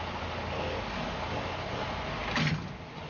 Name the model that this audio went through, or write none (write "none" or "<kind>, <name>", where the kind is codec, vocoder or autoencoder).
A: none